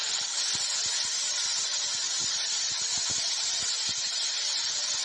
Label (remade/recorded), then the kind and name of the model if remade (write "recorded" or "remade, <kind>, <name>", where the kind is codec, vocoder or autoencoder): recorded